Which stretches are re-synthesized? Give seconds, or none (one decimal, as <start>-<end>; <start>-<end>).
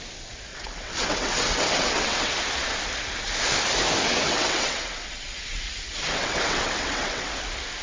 0.5-2.3; 4.0-7.3